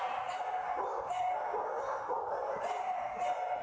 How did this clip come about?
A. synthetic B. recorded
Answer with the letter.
B